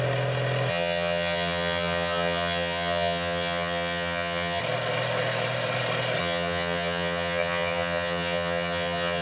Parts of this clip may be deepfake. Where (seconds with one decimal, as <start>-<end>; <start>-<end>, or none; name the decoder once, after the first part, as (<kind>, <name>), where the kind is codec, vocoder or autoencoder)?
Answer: 0.7-4.6 (vocoder, HiFi-GAN); 6.2-9.2

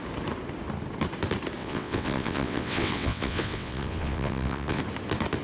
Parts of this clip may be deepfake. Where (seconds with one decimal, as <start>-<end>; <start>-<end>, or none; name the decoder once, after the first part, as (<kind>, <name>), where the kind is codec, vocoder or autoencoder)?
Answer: 1.6-4.8 (vocoder, WaveNeXt)

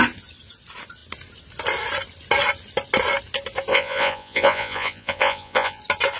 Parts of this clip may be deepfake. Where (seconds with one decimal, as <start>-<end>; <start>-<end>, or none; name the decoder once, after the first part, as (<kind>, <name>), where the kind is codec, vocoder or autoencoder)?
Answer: 3.7-5.8 (vocoder, Vocos)

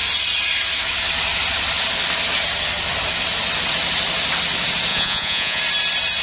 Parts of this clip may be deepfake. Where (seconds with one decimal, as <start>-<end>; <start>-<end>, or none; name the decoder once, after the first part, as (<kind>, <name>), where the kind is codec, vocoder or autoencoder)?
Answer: 4.9-5.6 (vocoder, Vocos)